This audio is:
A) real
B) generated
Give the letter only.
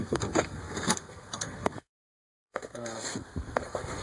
B